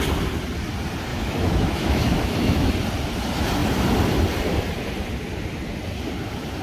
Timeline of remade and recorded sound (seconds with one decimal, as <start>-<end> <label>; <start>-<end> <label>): 0.0-1.1 recorded; 1.1-2.7 remade; 2.7-6.6 recorded